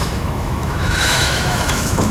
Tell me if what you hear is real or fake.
fake